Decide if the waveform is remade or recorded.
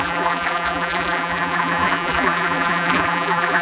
remade